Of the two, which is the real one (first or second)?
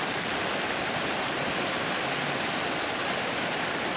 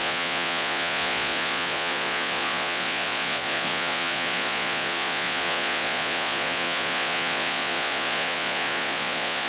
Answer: first